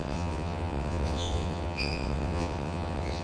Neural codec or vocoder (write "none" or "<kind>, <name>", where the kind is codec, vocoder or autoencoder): vocoder, WaveNeXt